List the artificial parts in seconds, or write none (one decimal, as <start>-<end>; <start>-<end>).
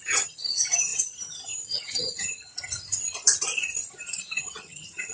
0.0-2.5; 4.4-5.1